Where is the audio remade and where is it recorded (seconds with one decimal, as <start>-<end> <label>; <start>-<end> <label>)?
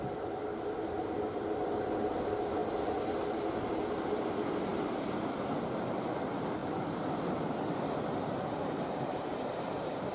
0.0-2.6 remade; 2.6-4.3 recorded; 4.3-4.7 remade; 4.7-6.0 recorded; 6.0-10.1 remade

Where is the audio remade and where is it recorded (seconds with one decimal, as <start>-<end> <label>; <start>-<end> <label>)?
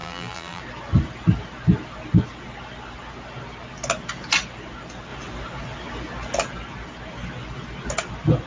0.0-0.6 remade; 0.6-8.5 recorded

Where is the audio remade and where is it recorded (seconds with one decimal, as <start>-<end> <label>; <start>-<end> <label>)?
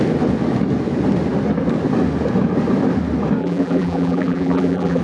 0.0-3.4 recorded; 3.4-5.0 remade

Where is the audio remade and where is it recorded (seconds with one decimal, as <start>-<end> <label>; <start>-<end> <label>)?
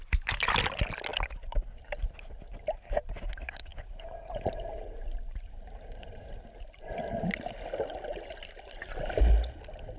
0.0-3.7 recorded; 3.7-7.0 remade; 7.0-10.0 recorded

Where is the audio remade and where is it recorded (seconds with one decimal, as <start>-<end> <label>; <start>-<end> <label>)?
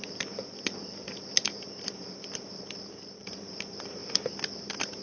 0.0-4.0 remade; 4.0-5.0 recorded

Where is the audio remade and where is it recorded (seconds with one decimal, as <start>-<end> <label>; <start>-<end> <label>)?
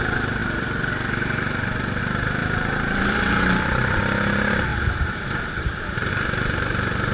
0.0-2.4 recorded; 2.4-4.0 remade; 4.0-4.7 recorded; 4.7-6.1 remade; 6.1-7.1 recorded